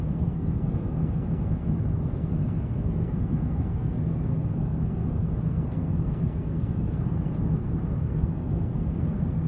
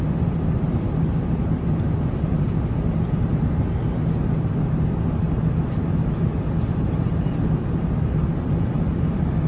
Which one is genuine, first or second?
second